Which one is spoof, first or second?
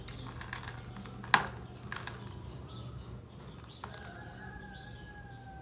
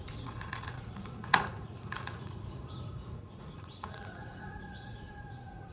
second